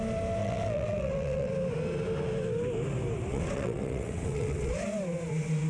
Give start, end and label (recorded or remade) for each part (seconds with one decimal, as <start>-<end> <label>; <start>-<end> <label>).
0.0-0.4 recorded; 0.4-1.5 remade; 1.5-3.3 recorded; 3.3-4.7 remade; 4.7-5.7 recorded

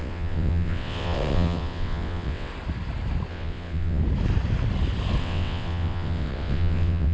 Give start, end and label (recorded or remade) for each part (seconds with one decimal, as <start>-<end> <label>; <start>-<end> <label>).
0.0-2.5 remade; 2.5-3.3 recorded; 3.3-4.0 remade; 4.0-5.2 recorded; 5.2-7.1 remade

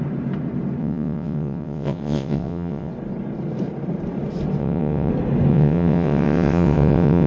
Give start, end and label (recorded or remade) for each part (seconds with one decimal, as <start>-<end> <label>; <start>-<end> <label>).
0.0-0.8 recorded; 0.8-2.9 remade; 2.9-4.6 recorded; 4.6-5.1 remade; 5.1-5.5 recorded; 5.5-7.3 remade

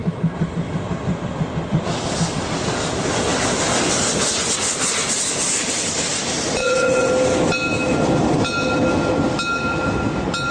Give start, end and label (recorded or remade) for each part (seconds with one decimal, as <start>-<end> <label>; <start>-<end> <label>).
0.0-6.6 recorded; 6.6-7.1 remade; 7.1-10.5 recorded